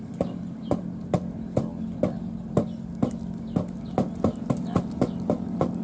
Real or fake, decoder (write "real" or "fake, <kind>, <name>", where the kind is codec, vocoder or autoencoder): real